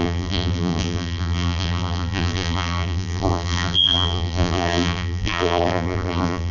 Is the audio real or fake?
fake